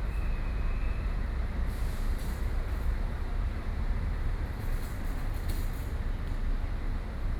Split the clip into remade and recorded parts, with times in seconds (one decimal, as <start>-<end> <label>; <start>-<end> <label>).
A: 0.0-0.8 recorded; 0.8-5.2 remade; 5.2-7.4 recorded